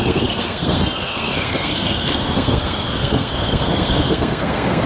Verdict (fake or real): fake